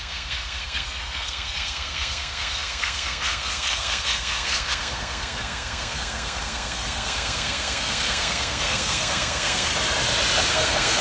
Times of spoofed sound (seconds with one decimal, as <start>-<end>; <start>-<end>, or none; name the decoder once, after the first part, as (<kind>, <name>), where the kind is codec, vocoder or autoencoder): 0.0-9.7 (codec, SNAC); 10.5-11.0